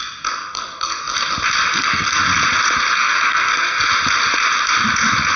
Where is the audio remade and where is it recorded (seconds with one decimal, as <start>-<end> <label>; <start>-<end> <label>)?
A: 0.0-0.4 recorded; 0.4-1.1 remade; 1.1-1.7 recorded; 1.7-2.2 remade; 2.2-2.9 recorded; 2.9-3.9 remade; 3.9-5.4 recorded